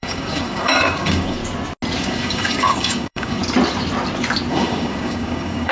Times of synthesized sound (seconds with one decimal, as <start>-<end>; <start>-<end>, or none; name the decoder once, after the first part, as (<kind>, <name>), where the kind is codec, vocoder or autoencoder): 0.0-1.4 (codec, DAC); 2.0-3.4; 4.5-5.7